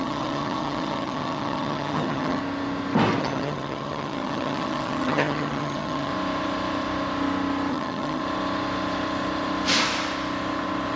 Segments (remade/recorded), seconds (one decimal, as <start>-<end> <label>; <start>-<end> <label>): 0.0-2.4 remade; 2.4-3.2 recorded; 3.2-6.1 remade; 6.1-7.7 recorded; 7.7-8.2 remade; 8.2-11.0 recorded